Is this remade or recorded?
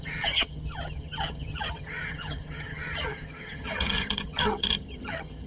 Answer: remade